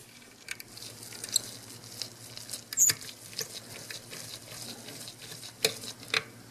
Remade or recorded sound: recorded